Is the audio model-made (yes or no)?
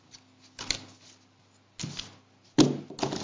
no